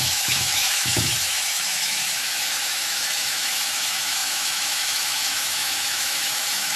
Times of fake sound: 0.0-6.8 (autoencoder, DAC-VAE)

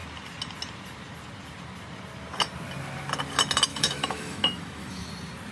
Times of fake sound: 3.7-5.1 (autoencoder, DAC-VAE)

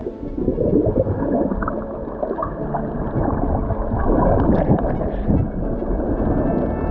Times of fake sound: 0.0-1.1 (vocoder, BigVGAN v2); 2.0-6.1